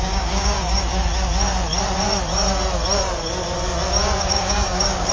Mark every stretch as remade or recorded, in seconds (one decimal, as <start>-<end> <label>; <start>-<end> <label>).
0.0-1.1 remade; 1.1-4.2 recorded; 4.2-5.1 remade